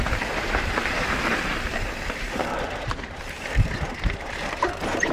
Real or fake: fake